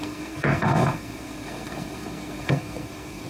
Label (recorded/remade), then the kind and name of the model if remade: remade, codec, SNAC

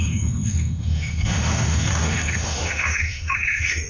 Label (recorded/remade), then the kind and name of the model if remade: remade, autoencoder, DAC-VAE